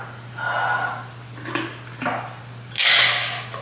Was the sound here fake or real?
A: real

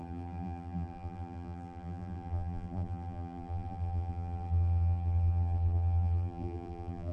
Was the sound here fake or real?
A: fake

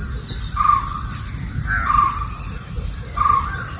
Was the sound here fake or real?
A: fake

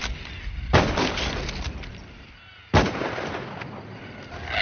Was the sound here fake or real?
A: real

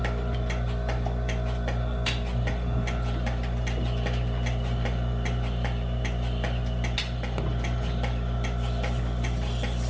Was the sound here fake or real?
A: real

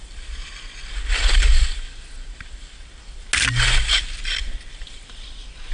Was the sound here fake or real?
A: real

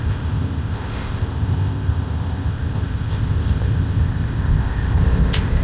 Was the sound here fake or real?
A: fake